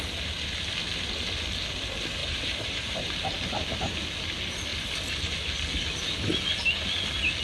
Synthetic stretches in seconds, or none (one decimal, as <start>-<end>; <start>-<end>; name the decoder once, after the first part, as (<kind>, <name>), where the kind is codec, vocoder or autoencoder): 2.2-3.1 (vocoder, BigVGAN v2)